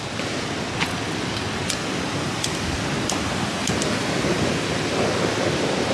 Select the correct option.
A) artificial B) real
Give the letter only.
B